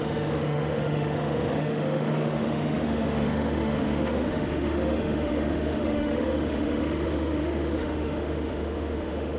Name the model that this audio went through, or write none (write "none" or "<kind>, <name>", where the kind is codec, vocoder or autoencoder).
autoencoder, DAC-VAE